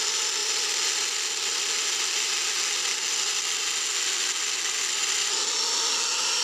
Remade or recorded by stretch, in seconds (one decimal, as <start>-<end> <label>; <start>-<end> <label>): 0.0-6.4 recorded